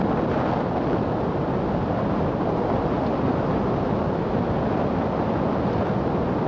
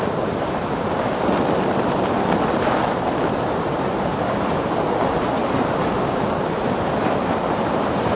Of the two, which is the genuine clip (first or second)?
first